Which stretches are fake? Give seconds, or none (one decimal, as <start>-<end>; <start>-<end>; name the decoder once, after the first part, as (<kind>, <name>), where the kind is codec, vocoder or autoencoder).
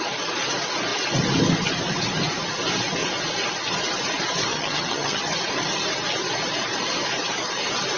4.5-5.2 (vocoder, HiFi-GAN)